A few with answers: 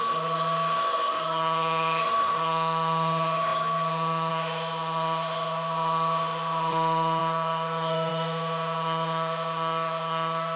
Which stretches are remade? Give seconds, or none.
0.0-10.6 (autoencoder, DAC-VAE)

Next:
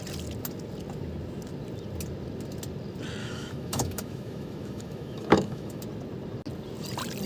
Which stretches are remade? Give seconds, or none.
3.2-5.8 (autoencoder, DAC-VAE)